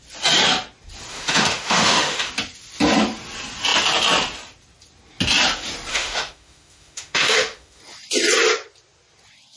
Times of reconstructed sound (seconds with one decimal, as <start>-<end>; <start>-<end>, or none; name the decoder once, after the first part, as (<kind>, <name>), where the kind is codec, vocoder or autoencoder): 1.1-2.3 (autoencoder, DAC-VAE); 5.9-7.8